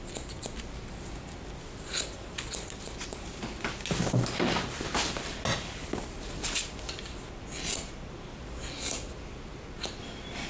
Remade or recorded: recorded